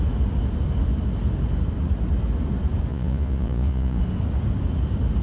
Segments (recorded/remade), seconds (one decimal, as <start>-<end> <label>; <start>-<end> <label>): 0.0-2.9 recorded; 2.9-4.0 remade; 4.0-5.2 recorded